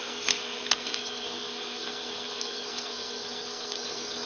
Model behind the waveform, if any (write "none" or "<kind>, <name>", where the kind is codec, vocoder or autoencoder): codec, SNAC